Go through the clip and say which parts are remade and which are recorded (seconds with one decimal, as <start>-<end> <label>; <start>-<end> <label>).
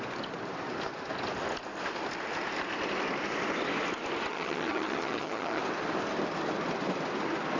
0.0-4.3 recorded; 4.3-5.6 remade; 5.6-7.6 recorded